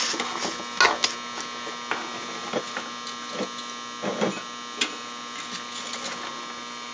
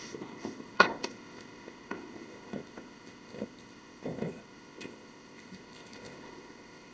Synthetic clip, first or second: second